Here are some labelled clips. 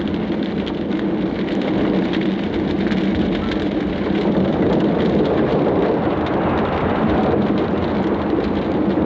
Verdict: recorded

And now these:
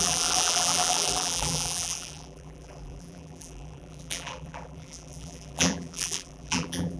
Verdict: remade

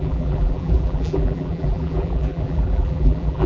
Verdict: remade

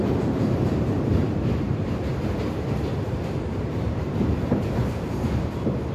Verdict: remade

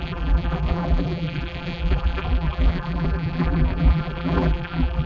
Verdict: remade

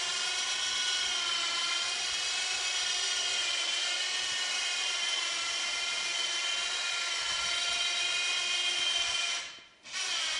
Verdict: recorded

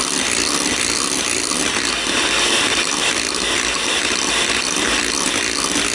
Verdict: recorded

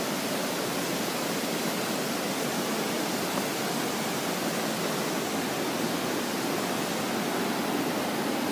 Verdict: recorded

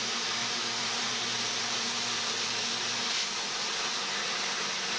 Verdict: remade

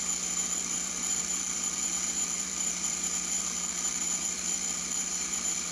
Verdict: remade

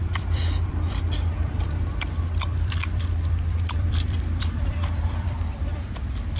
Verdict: remade